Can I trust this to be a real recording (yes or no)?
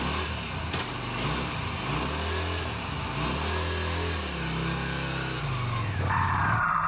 yes